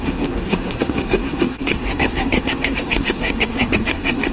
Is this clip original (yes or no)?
no